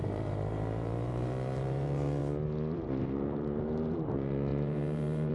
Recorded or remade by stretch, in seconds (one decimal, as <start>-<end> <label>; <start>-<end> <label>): 0.0-2.2 remade; 2.2-3.0 recorded; 3.0-5.3 remade